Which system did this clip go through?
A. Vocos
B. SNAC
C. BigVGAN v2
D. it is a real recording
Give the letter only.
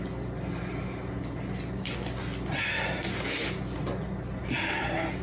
D